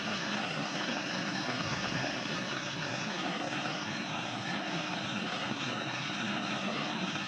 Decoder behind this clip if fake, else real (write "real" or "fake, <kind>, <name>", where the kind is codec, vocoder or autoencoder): fake, codec, SNAC